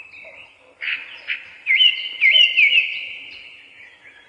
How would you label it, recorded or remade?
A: recorded